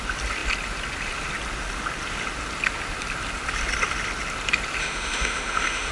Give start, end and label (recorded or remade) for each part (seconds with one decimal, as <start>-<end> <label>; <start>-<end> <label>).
0.0-4.8 recorded; 4.8-5.9 remade